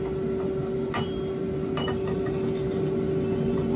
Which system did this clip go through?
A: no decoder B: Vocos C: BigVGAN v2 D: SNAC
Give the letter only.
A